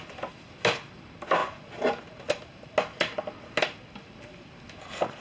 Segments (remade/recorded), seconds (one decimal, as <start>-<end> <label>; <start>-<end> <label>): 0.0-5.2 recorded